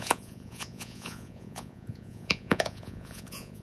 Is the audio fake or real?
fake